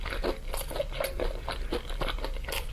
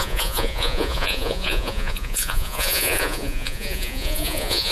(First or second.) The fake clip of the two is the second